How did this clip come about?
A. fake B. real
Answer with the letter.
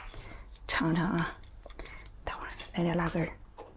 B